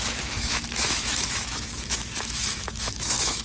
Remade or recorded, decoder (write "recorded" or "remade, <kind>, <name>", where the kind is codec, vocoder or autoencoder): remade, autoencoder, DAC-VAE